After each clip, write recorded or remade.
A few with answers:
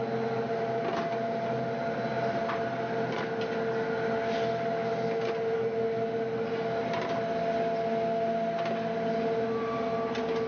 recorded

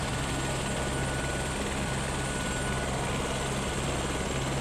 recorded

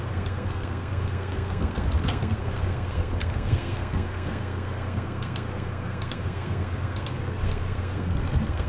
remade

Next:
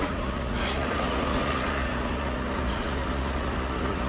remade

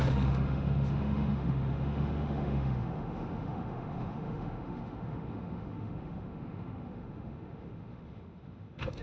remade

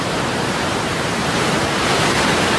remade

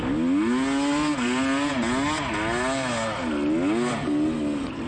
recorded